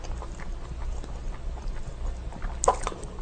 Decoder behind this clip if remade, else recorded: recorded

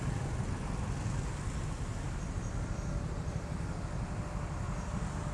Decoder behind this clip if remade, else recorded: recorded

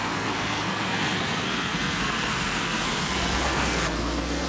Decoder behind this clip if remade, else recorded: remade, codec, SNAC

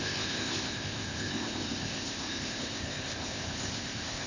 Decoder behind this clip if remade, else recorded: remade, codec, ZipCodec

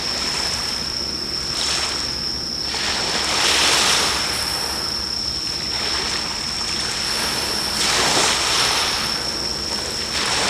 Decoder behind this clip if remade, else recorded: recorded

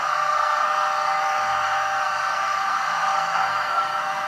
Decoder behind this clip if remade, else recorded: remade, codec, SNAC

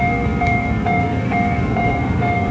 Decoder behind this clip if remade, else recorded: remade, codec, SNAC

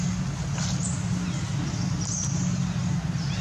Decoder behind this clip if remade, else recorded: recorded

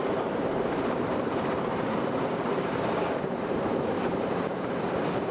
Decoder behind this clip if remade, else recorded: remade, vocoder, BigVGAN v2